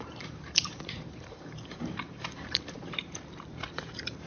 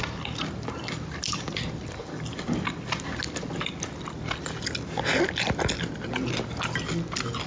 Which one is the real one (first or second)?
second